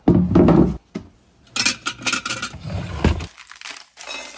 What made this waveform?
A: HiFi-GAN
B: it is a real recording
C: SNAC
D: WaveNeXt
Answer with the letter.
B